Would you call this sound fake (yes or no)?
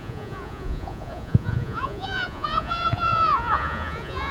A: yes